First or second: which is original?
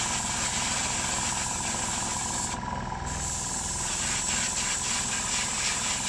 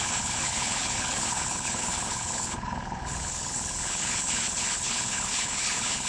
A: first